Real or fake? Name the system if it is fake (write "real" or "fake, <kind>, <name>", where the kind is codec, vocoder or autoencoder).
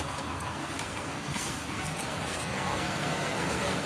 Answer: fake, codec, SNAC